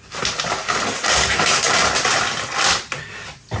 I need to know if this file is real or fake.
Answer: real